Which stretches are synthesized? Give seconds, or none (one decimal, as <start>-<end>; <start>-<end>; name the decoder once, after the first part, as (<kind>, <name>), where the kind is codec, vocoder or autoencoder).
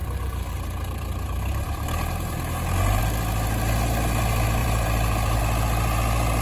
0.0-3.0 (vocoder, BigVGAN v2); 4.6-5.4